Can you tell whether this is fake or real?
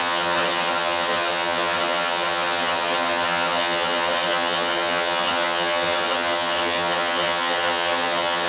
fake